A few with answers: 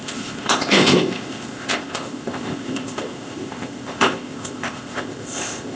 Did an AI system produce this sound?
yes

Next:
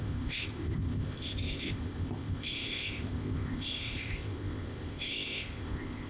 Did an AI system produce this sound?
yes